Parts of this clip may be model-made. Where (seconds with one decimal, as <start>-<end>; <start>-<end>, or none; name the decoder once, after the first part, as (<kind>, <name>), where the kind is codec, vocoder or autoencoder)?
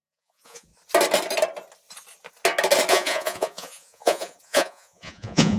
0.0-0.7 (vocoder, Vocos); 2.9-5.6